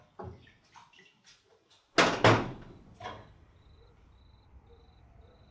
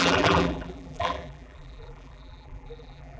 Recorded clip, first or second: first